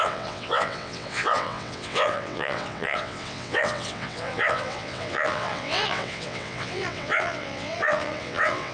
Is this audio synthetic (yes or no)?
yes